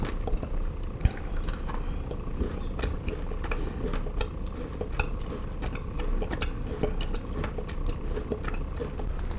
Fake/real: real